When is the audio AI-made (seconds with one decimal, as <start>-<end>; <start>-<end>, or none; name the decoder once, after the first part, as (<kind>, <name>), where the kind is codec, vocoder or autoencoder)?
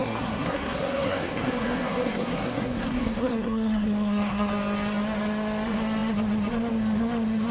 0.0-4.5 (codec, SNAC)